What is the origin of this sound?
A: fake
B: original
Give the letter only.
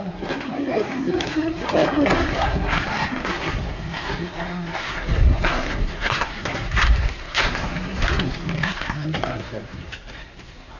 A